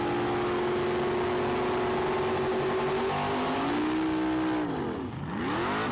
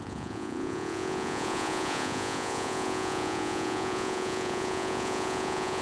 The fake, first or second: second